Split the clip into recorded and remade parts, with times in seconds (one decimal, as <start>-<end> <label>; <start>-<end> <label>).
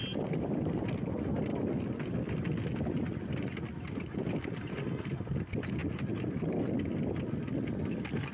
0.0-8.3 recorded